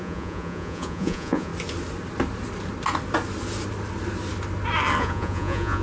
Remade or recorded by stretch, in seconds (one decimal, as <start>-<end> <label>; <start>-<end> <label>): 0.0-1.5 remade; 1.5-5.0 recorded; 5.0-5.8 remade